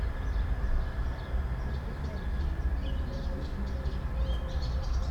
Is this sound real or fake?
real